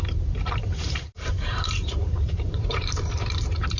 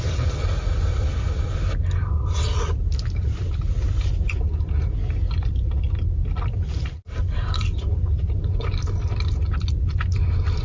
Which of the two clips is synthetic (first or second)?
first